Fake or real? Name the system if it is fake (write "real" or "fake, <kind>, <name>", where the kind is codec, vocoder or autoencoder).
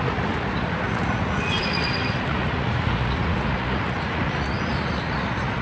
fake, vocoder, Vocos